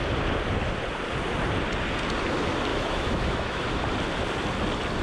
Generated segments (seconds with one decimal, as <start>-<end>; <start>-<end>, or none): 2.7-3.6